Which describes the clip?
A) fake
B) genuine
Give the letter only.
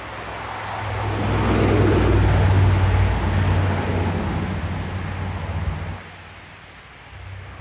B